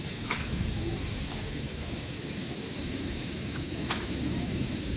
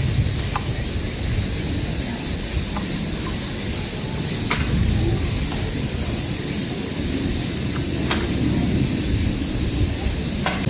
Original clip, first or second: second